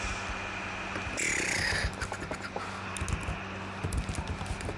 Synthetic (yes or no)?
no